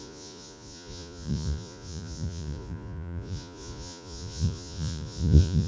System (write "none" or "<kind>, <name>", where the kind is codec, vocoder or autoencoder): vocoder, Vocos